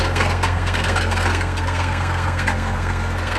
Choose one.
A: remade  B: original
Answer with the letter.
A